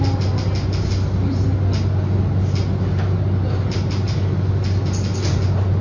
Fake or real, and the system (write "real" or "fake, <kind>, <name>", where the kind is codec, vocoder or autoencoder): real